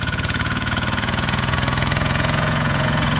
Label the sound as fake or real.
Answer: fake